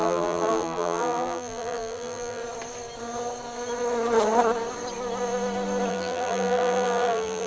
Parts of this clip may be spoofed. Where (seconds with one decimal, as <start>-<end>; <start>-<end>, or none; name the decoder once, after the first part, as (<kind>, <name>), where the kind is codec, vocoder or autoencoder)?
0.0-2.4 (vocoder, BigVGAN v2); 5.9-7.5